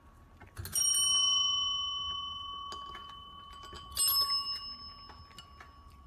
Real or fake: real